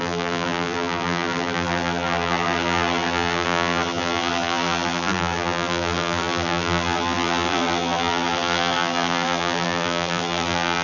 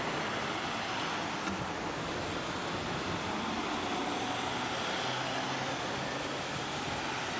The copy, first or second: first